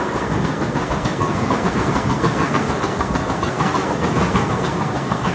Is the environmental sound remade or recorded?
remade